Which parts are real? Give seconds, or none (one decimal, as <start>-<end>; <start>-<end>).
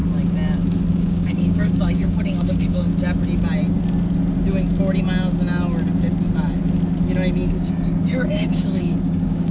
0.0-0.9; 2.9-7.5